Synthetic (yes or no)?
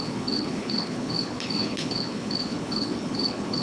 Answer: yes